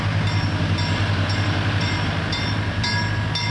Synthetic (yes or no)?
no